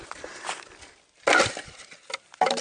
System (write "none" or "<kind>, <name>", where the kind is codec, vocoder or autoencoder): none